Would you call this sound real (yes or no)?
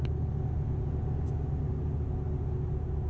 yes